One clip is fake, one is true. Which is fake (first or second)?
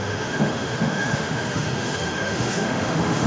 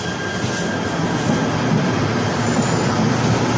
first